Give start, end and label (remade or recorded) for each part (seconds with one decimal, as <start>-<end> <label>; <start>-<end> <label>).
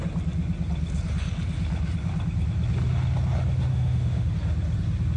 0.0-3.7 recorded; 3.7-4.3 remade; 4.3-5.2 recorded